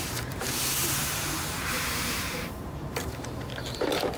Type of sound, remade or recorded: remade